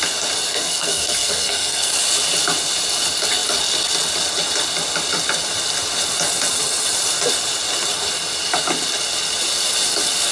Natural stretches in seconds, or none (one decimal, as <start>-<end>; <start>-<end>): 0.0-0.5; 1.9-10.3